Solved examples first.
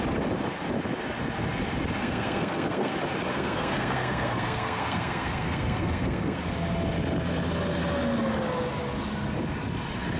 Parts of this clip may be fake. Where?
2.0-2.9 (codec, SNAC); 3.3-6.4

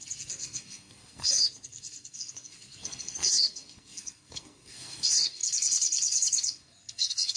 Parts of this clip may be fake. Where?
0.0-7.4 (codec, SNAC)

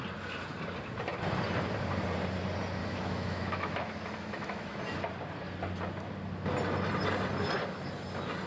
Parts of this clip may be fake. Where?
2.8-4.8 (autoencoder, DAC-VAE)

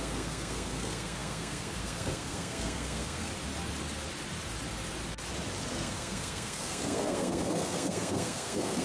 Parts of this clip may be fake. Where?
0.0-3.3 (codec, SNAC); 5.7-8.8

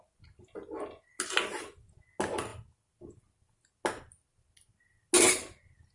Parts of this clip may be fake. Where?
none

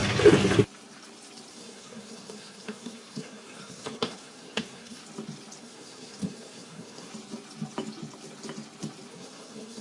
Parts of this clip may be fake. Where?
1.5-5.0 (codec, SNAC); 5.6-7.1; 9.1-9.8